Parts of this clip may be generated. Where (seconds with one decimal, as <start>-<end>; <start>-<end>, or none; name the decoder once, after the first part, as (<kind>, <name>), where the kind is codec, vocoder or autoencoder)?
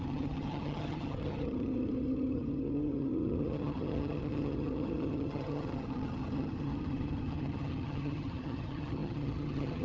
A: 0.0-9.8 (vocoder, HiFi-GAN)